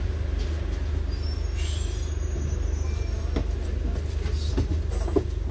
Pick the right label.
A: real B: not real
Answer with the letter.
A